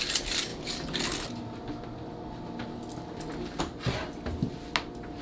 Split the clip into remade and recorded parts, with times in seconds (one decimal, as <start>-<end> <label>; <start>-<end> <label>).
0.0-5.2 recorded